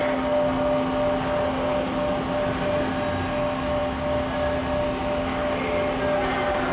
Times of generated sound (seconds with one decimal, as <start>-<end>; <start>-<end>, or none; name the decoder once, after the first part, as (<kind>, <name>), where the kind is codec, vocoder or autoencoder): none